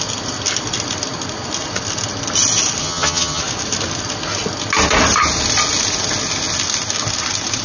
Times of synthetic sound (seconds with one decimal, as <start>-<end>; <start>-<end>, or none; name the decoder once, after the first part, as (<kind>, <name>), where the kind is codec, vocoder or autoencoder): 2.8-3.4 (vocoder, HiFi-GAN)